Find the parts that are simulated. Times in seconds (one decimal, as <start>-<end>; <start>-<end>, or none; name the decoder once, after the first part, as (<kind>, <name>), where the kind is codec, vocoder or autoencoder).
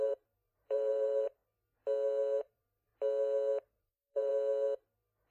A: 0.0-1.4 (vocoder, BigVGAN v2); 2.4-2.9; 3.8-4.3